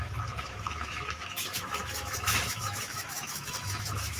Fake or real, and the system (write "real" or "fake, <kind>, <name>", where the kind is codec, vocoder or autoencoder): fake, autoencoder, DAC-VAE